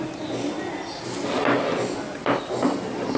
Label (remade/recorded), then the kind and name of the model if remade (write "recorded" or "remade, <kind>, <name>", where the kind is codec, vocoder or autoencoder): recorded